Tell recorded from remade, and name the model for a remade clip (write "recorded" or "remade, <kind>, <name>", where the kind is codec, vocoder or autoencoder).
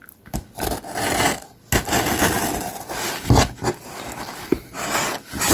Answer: recorded